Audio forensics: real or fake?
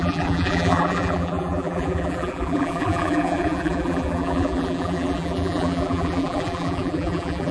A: fake